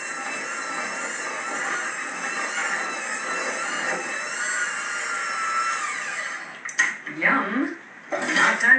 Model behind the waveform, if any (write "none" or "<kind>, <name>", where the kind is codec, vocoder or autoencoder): none